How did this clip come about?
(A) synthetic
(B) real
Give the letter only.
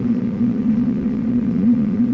A